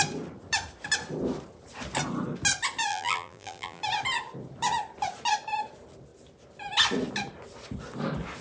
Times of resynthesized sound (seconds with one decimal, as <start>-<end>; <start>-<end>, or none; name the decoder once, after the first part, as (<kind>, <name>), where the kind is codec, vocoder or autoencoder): 2.9-3.8 (vocoder, BigVGAN v2)